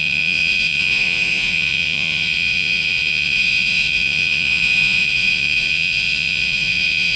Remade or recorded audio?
remade